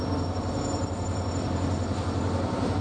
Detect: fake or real fake